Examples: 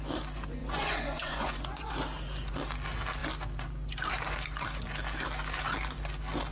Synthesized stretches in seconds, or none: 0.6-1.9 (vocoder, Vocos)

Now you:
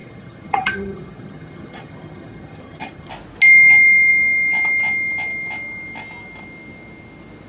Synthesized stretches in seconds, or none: 0.0-3.1 (vocoder, HiFi-GAN)

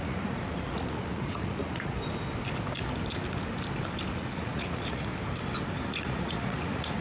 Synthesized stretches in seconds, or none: 0.0-2.0 (vocoder, Vocos); 4.1-5.1; 5.9-7.0